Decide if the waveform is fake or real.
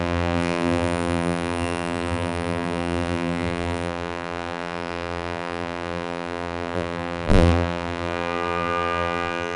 fake